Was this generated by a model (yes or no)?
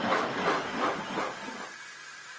no